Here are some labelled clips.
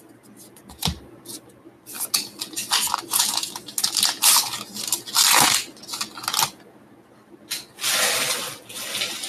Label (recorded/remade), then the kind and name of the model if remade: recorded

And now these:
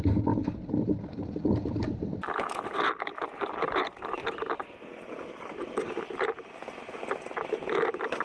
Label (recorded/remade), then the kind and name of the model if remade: recorded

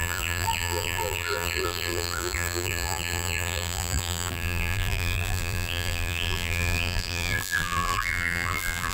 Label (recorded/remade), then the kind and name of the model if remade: remade, vocoder, BigVGAN v2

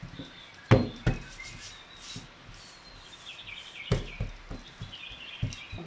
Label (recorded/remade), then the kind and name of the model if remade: recorded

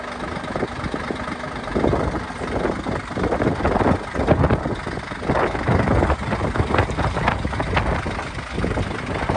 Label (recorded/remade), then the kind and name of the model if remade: recorded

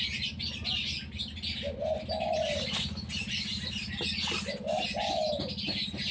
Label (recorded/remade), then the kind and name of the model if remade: recorded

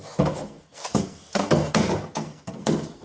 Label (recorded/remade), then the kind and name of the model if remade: remade, codec, SNAC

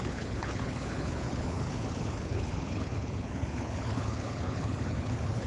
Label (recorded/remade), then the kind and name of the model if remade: remade, codec, HILCodec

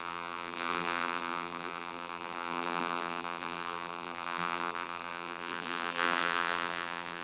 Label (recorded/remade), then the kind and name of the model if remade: remade, vocoder, BigVGAN v2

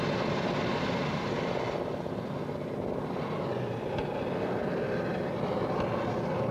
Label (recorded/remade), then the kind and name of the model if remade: recorded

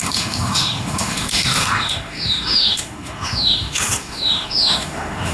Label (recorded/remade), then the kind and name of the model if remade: remade, autoencoder, DAC-VAE